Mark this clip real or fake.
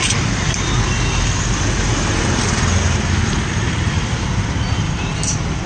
real